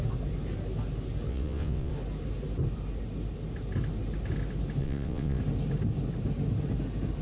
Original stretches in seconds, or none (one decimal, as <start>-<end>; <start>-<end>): 0.0-1.3; 1.9-4.8; 5.4-7.2